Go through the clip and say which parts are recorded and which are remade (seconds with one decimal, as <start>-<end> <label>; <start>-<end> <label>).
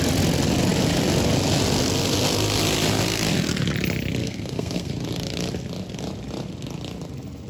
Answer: 0.0-4.2 recorded; 4.2-4.9 remade; 4.9-7.5 recorded